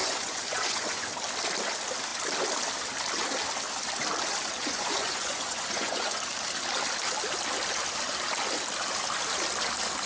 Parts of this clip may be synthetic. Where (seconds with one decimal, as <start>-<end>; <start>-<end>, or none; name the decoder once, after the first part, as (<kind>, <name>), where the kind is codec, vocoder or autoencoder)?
0.0-1.1 (vocoder, Vocos); 4.6-6.2